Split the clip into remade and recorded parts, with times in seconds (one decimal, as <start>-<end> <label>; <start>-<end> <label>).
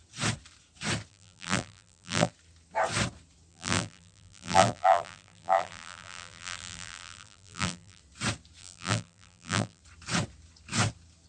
0.0-1.1 recorded; 1.1-2.3 remade; 2.3-3.5 recorded; 3.5-8.0 remade; 8.0-8.6 recorded; 8.6-9.8 remade; 9.8-11.3 recorded